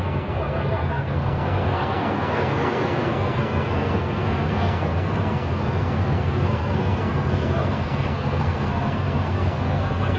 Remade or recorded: remade